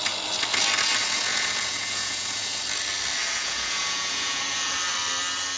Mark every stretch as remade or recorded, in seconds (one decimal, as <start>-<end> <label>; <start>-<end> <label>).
0.0-1.0 recorded; 1.0-2.6 remade; 2.6-3.2 recorded; 3.2-4.8 remade; 4.8-5.6 recorded